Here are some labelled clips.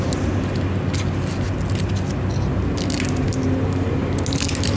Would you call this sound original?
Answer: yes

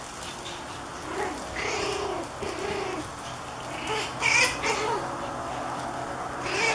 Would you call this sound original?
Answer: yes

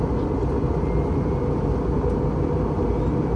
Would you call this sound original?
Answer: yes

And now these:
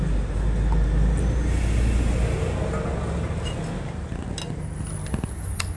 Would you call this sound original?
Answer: yes